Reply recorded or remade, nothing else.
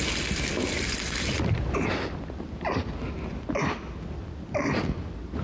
recorded